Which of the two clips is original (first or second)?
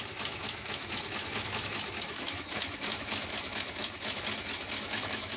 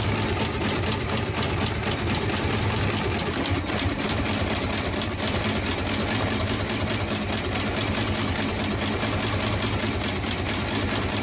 second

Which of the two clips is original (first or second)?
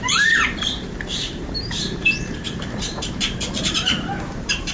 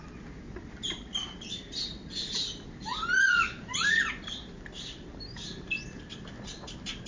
second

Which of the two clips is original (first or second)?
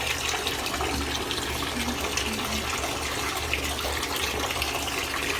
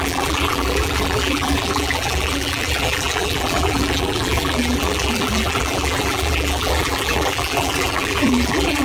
first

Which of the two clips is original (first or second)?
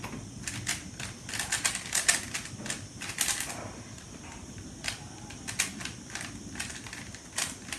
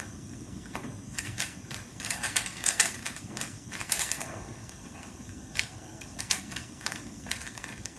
first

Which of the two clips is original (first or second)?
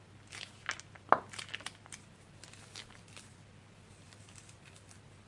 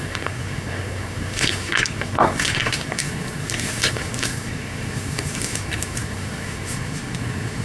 first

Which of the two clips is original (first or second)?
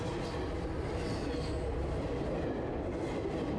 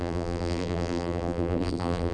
first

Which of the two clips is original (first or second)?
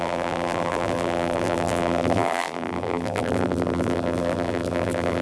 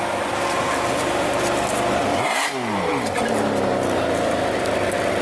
second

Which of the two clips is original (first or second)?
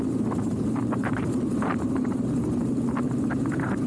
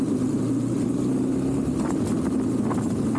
second